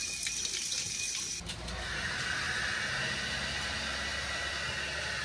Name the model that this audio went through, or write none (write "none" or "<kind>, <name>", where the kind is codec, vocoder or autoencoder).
none